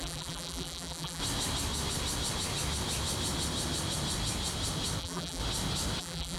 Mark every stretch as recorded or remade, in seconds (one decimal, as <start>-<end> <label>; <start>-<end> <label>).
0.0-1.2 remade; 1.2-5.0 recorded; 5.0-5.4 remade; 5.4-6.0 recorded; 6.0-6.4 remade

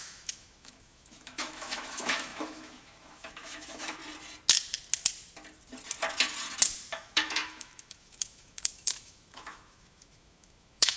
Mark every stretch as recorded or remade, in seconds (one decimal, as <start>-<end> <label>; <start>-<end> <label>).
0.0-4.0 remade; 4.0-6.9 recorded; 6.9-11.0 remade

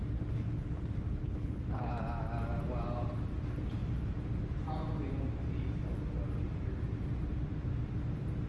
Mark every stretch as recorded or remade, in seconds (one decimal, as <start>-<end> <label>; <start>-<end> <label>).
0.0-1.2 recorded; 1.2-1.9 remade; 1.9-8.5 recorded